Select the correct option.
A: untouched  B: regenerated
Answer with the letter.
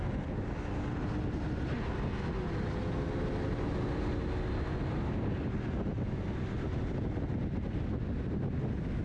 A